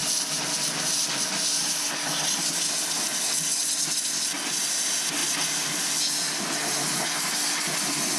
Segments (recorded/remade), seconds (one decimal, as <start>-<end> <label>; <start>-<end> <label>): 0.0-1.8 remade; 1.8-5.2 recorded; 5.2-6.0 remade; 6.0-8.2 recorded